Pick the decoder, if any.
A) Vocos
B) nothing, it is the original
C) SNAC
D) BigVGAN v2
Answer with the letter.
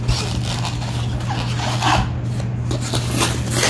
B